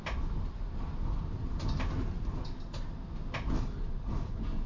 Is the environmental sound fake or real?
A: real